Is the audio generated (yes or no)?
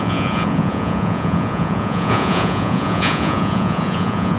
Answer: yes